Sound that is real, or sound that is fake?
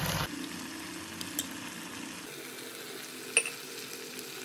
real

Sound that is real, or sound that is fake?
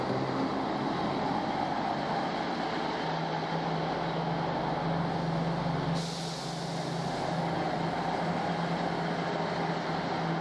real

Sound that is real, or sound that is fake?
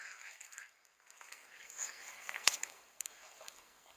fake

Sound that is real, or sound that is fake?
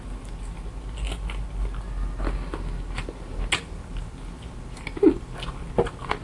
real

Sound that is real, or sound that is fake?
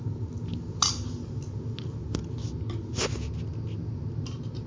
real